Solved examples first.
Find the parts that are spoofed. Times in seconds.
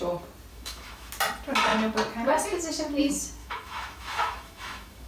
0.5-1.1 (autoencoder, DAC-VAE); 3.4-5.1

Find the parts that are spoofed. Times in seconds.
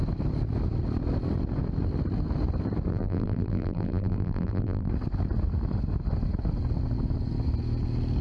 2.9-4.9 (vocoder, BigVGAN v2)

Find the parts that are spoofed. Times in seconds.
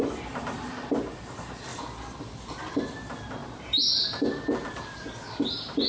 3.4-3.9 (vocoder, BigVGAN v2)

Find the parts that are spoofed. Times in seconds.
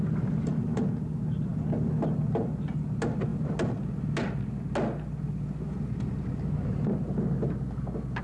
none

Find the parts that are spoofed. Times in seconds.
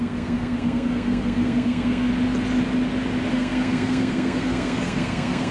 0.0-2.1 (codec, SNAC); 3.3-5.5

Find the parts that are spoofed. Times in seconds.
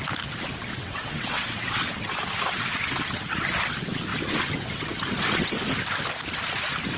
0.8-1.8 (vocoder, WaveNeXt)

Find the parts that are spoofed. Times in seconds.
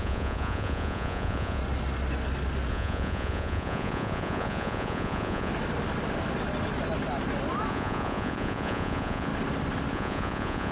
0.0-1.6 (vocoder, Vocos); 2.7-5.5; 7.7-9.3; 9.9-10.7